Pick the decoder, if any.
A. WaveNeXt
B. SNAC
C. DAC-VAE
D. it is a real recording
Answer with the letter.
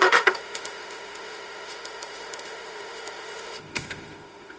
C